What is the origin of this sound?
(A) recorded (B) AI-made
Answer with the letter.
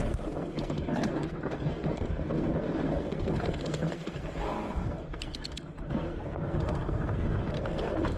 B